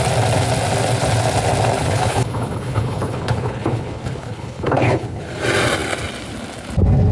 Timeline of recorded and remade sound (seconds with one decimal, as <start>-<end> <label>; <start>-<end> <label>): 0.0-1.8 recorded; 1.8-5.2 remade; 5.2-7.1 recorded